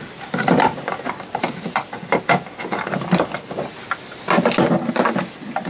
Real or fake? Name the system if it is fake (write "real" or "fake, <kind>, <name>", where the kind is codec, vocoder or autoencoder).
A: real